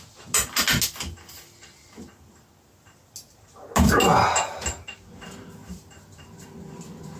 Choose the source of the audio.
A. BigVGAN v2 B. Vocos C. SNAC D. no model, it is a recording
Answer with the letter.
D